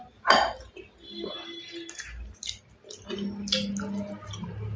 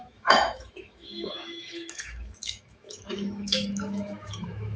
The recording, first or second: first